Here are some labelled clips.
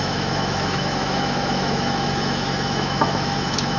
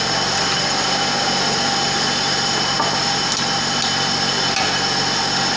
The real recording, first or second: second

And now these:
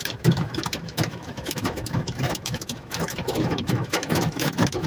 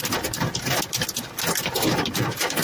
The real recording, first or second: second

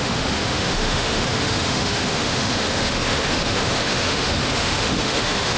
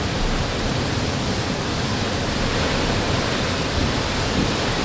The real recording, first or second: second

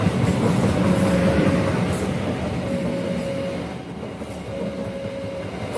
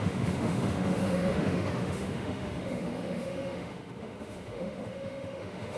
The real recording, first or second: first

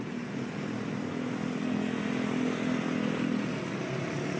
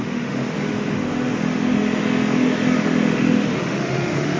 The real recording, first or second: first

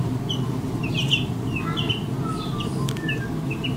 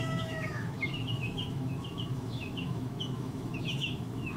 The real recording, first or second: first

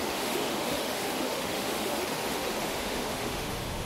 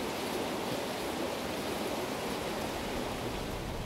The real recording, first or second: second